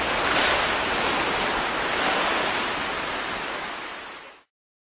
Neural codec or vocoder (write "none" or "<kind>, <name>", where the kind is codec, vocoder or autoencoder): none